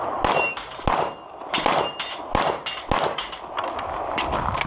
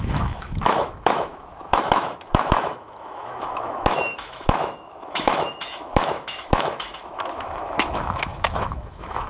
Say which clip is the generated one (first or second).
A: second